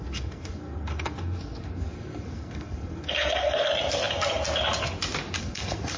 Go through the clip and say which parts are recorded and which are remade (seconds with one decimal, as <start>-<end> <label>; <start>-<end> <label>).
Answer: 0.0-3.7 remade; 3.7-5.4 recorded; 5.4-6.0 remade